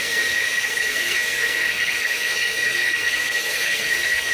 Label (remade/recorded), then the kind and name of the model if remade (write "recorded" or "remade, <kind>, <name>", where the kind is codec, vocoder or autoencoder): remade, codec, SNAC